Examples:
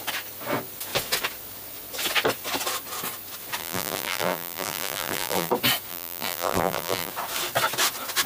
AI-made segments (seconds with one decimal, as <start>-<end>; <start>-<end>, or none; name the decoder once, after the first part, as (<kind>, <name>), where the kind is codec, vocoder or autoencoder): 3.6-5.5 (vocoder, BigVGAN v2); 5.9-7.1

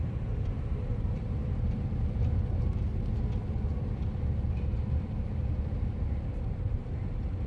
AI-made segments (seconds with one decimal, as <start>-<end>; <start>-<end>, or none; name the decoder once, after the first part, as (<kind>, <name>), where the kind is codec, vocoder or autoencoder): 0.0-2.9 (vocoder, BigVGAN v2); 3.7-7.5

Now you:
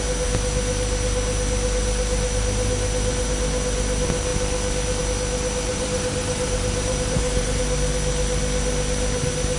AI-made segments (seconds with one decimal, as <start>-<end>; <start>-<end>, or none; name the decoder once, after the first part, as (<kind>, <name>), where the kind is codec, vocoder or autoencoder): 5.7-7.6 (vocoder, BigVGAN v2)

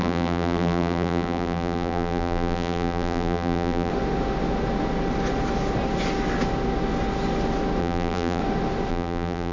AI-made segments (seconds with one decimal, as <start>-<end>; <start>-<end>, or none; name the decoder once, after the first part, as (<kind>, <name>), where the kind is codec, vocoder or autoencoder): 0.0-3.9 (vocoder, BigVGAN v2); 7.8-8.4; 8.9-9.5

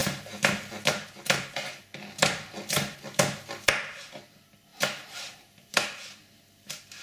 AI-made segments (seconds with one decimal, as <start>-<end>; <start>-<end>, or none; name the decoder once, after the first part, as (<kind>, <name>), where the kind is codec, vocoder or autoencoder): 0.0-0.5 (vocoder, BigVGAN v2); 4.7-6.3

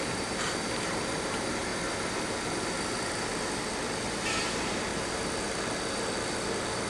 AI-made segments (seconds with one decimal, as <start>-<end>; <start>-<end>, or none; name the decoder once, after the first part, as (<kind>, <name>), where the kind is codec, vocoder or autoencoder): 0.0-1.7 (vocoder, BigVGAN v2); 4.4-4.9

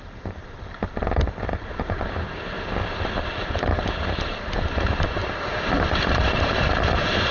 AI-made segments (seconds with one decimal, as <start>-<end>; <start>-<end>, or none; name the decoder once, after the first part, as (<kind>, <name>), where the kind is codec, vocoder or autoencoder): 0.0-0.8 (vocoder, BigVGAN v2); 1.8-5.2; 6.1-7.3

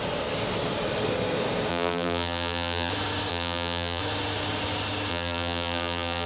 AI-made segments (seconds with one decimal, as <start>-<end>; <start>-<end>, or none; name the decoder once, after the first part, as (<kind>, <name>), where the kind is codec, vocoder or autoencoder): 1.7-2.9 (vocoder, BigVGAN v2); 3.3-4.0; 5.1-6.3